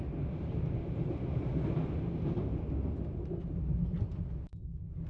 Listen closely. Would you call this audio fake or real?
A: real